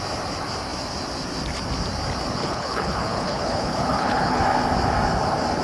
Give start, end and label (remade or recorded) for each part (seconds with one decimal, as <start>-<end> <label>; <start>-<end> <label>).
0.0-2.4 recorded; 2.4-4.4 remade; 4.4-5.6 recorded